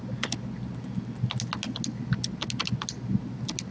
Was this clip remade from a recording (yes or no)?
no